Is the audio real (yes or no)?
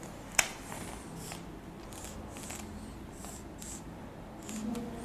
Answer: yes